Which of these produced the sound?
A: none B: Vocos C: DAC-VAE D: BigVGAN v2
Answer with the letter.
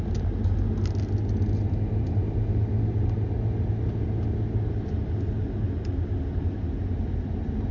A